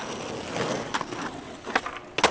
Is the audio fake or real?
real